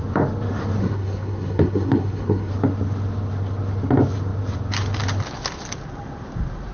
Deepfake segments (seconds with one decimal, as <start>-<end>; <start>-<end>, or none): 0.8-2.5